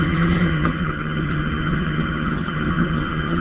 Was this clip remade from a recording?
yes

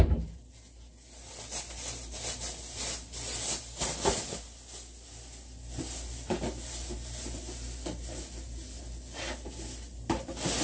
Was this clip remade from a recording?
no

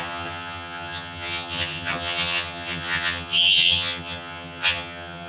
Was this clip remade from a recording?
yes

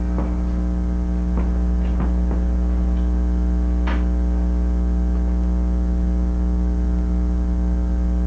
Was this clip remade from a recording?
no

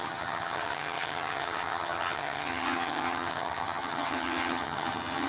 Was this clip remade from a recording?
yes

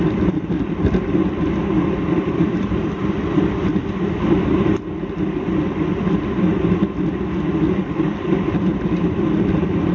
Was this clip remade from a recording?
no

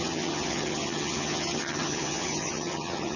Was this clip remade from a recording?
yes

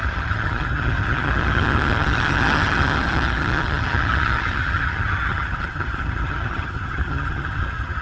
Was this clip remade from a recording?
yes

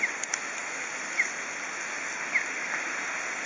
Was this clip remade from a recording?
no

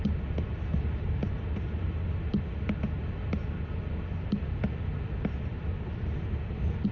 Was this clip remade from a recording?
no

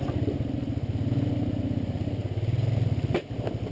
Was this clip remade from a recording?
no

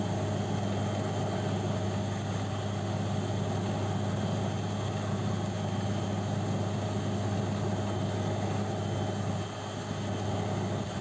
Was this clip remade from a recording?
no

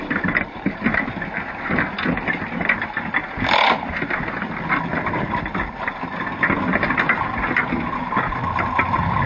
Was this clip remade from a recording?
no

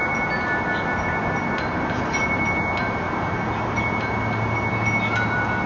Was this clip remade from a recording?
no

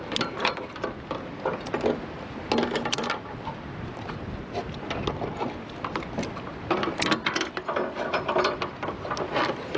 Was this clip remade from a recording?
no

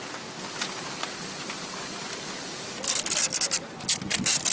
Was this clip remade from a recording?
no